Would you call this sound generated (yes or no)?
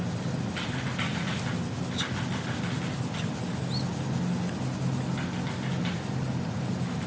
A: no